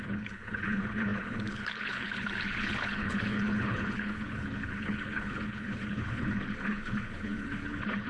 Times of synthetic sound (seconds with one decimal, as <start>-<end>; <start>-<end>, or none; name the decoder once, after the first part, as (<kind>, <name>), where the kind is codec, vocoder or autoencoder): 0.0-8.1 (codec, HILCodec)